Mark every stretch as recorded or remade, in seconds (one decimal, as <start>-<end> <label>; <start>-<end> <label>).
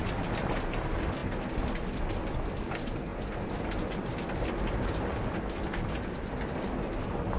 0.0-7.4 recorded